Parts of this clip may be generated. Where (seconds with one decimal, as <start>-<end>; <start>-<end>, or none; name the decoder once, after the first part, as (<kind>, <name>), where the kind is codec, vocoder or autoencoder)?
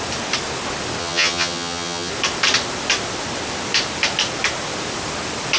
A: 1.0-2.1 (vocoder, HiFi-GAN)